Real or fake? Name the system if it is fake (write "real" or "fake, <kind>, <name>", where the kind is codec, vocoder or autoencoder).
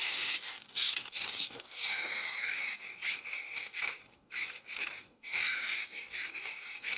fake, codec, DAC